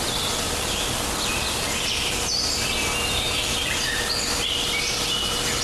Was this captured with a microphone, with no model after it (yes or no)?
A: yes